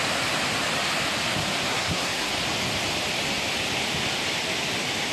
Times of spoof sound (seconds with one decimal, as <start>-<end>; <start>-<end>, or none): 1.7-2.3